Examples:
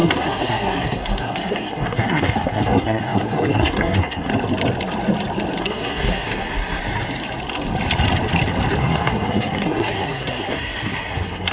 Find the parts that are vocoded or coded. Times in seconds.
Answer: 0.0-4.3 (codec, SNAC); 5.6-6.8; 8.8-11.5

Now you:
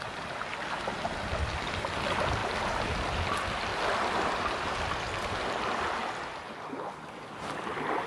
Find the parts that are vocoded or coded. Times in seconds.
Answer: none

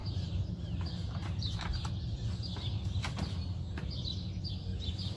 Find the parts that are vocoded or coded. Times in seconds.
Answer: 0.0-0.5 (vocoder, BigVGAN v2); 1.2-1.9

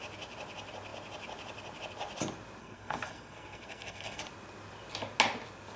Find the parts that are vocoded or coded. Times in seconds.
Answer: 2.6-4.2 (codec, SNAC)

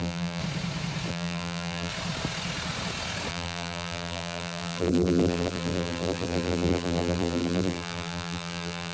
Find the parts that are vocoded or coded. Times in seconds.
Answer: 0.0-0.4 (vocoder, BigVGAN v2); 1.1-1.9; 3.3-8.9